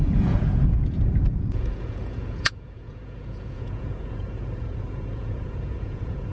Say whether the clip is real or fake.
fake